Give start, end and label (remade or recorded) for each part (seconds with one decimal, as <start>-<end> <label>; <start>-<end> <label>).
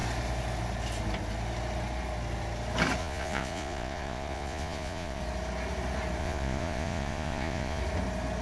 0.0-3.0 recorded; 3.0-5.2 remade; 5.2-6.2 recorded; 6.2-7.8 remade; 7.8-8.4 recorded